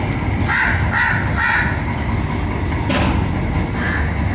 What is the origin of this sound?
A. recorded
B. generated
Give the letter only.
A